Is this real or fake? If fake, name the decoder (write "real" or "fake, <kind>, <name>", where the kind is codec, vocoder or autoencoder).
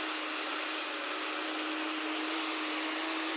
real